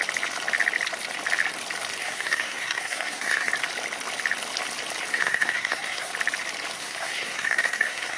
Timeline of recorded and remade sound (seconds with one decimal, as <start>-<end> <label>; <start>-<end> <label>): 0.0-2.0 recorded; 2.0-3.5 remade; 3.5-5.1 recorded; 5.1-6.1 remade; 6.1-6.8 recorded; 6.8-8.2 remade